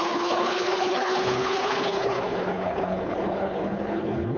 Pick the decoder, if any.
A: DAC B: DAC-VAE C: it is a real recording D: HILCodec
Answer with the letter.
D